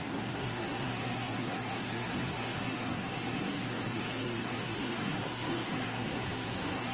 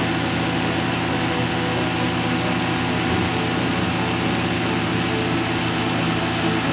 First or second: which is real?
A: second